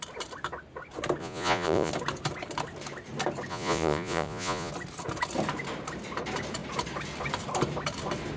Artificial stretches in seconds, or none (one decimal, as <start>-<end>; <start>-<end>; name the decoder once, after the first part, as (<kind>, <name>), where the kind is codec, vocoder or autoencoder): 1.2-1.9 (vocoder, Vocos); 3.5-4.7